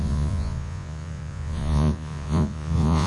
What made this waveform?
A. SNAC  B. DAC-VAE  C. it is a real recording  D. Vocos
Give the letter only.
D